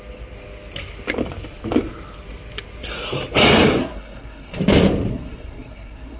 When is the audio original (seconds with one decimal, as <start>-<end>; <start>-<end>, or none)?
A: 0.0-3.8; 4.6-5.1